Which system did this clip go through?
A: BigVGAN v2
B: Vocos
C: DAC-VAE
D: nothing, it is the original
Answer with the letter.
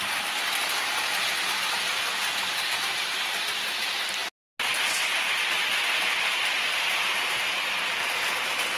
D